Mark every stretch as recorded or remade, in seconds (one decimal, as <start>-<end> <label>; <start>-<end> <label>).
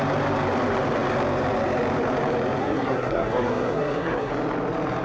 0.0-2.6 recorded; 2.6-4.3 remade; 4.3-5.0 recorded